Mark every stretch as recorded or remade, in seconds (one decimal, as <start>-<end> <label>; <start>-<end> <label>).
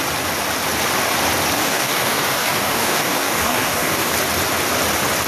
0.0-1.6 recorded; 1.6-4.1 remade; 4.1-5.3 recorded